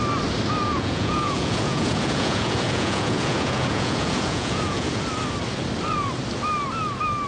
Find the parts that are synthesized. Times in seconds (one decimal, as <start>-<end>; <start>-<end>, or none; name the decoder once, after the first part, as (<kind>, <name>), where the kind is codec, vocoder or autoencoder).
0.6-5.0 (vocoder, Vocos)